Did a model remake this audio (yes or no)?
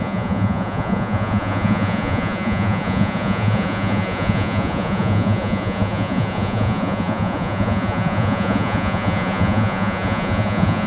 yes